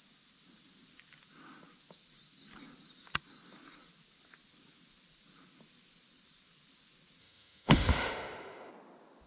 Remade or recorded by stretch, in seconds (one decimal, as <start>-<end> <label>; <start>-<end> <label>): 0.0-7.2 recorded; 7.2-8.7 remade; 8.7-9.3 recorded